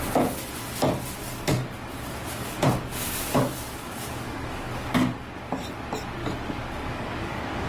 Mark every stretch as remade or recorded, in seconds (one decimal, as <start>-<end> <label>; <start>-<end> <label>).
0.0-1.2 recorded; 1.2-5.3 remade; 5.3-6.2 recorded; 6.2-7.7 remade